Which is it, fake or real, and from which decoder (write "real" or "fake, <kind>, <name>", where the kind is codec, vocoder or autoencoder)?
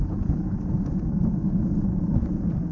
fake, vocoder, Vocos